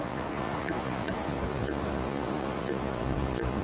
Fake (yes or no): yes